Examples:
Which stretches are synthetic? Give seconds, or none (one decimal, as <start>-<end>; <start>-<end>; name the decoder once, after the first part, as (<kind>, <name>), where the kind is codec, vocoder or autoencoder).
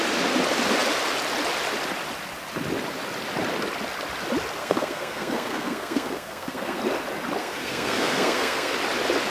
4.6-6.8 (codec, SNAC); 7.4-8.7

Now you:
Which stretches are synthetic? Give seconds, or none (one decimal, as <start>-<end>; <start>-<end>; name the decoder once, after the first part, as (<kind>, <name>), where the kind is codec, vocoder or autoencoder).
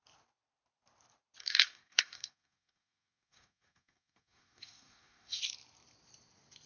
1.4-5.4 (codec, SNAC)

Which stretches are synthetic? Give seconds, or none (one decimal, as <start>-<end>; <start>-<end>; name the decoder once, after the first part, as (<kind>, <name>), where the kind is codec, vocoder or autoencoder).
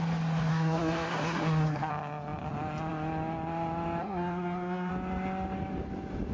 0.5-1.9 (codec, SNAC); 4.0-4.9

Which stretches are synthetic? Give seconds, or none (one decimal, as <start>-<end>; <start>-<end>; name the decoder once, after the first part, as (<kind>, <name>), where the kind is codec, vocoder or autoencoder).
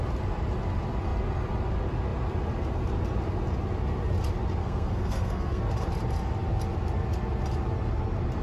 4.6-5.6 (codec, SNAC)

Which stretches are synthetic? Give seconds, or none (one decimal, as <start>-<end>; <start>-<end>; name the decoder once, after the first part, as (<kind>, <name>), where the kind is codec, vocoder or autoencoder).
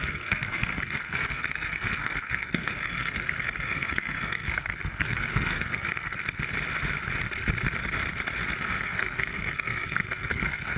0.0-6.2 (codec, SNAC); 8.6-10.8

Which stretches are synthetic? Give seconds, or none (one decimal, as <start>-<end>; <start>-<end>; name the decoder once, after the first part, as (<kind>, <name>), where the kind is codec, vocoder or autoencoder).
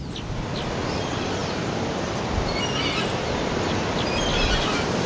none